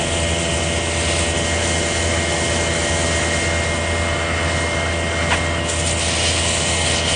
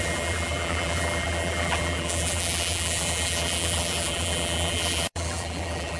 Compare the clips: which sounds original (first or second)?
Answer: first